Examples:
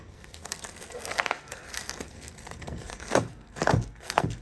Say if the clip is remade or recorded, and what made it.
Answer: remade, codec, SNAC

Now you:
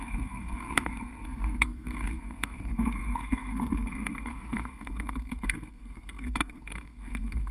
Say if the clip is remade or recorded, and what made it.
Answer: remade, codec, SNAC